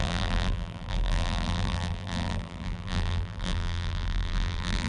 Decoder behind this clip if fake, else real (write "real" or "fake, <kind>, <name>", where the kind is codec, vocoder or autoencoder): fake, vocoder, BigVGAN v2